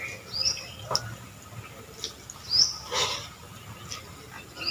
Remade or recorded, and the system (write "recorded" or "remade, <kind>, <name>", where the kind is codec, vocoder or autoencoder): recorded